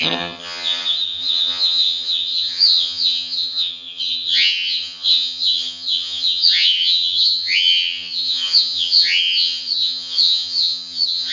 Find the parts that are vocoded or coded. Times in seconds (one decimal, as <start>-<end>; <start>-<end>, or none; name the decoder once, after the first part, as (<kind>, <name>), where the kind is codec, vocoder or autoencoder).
0.0-11.3 (vocoder, HiFi-GAN)